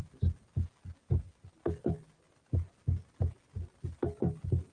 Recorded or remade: recorded